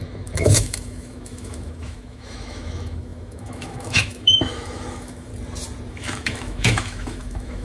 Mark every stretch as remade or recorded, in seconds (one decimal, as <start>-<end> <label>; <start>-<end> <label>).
0.0-5.3 remade; 5.3-5.9 recorded; 5.9-7.6 remade